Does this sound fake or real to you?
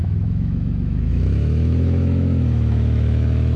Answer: fake